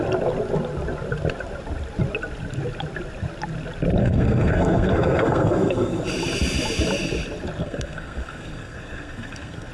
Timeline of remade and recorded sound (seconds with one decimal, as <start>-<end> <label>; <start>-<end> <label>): 0.0-4.0 recorded; 4.0-6.0 remade; 6.0-7.6 recorded; 7.6-9.7 remade